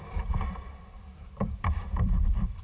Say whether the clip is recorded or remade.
remade